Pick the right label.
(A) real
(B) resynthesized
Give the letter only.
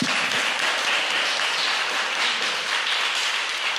A